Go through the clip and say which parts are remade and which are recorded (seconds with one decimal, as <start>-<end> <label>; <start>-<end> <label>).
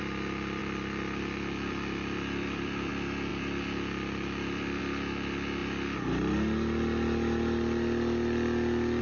0.0-0.6 recorded; 0.6-2.9 remade; 2.9-3.3 recorded; 3.3-4.8 remade; 4.8-9.0 recorded